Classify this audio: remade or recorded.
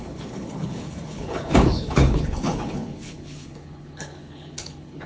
remade